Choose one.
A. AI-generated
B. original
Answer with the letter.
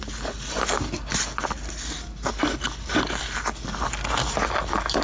B